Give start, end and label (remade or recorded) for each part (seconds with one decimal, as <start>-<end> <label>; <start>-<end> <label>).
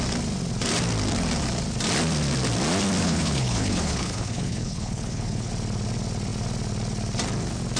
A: 0.0-3.0 recorded; 3.0-5.5 remade; 5.5-7.8 recorded